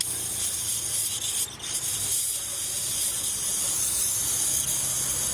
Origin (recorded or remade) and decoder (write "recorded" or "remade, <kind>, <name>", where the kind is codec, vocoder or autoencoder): recorded